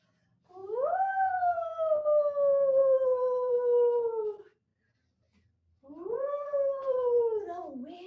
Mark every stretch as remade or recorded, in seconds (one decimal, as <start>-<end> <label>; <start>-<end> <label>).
0.0-0.6 recorded; 0.6-2.0 remade; 2.0-2.8 recorded; 2.8-3.5 remade; 3.5-4.7 recorded; 4.7-8.1 remade